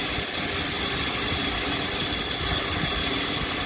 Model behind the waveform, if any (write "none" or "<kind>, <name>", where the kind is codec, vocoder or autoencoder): none